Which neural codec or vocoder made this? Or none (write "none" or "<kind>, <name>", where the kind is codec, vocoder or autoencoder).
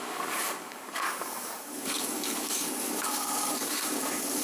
codec, DAC